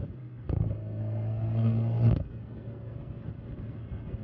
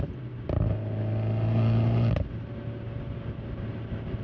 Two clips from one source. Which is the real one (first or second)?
second